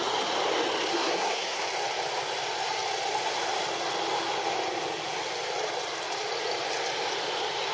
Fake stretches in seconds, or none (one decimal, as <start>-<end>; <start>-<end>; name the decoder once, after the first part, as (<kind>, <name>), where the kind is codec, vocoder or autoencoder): 0.9-1.6 (codec, SNAC)